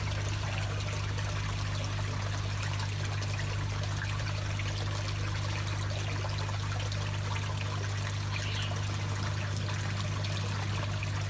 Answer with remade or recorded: recorded